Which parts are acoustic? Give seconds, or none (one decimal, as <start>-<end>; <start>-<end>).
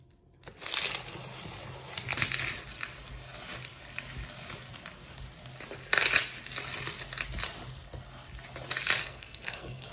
0.0-9.0